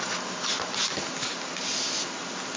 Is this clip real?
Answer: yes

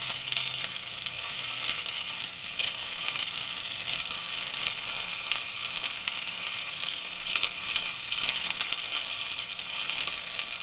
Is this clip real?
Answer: no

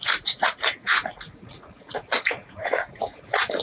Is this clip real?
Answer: no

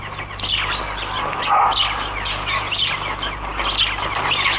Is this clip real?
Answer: yes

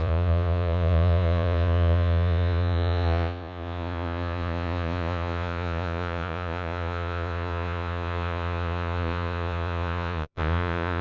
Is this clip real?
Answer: no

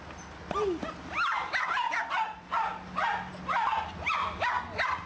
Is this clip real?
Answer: yes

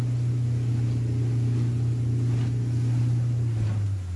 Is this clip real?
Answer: yes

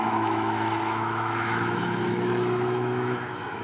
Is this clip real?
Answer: no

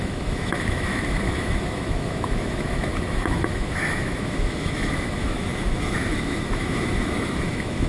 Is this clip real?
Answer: no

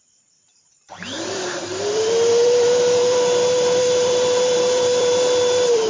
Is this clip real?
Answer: no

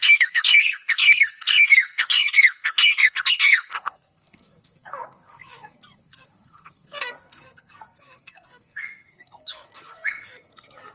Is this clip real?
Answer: no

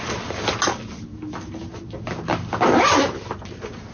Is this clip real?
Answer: yes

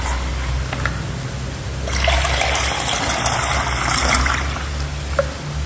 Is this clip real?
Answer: yes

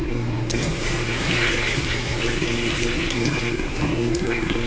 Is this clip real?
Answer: no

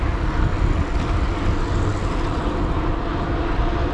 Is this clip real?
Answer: yes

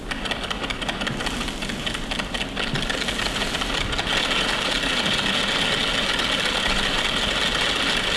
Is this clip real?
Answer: yes